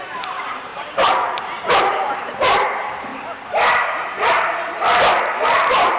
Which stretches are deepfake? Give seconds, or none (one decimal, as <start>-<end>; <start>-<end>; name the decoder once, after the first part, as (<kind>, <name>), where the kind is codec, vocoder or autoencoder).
0.0-3.1 (vocoder, BigVGAN v2); 5.4-6.0